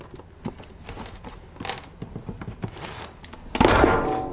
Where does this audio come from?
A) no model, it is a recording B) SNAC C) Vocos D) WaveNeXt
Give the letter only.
A